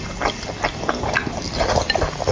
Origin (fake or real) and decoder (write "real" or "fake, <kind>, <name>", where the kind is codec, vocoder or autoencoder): real